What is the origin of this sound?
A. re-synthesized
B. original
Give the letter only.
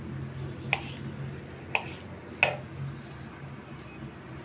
B